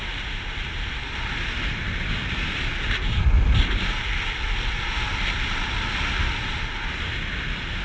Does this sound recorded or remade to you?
recorded